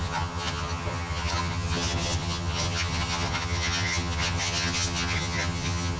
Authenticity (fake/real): fake